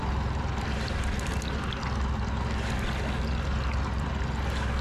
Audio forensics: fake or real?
real